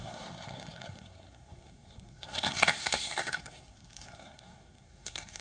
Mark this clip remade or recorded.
remade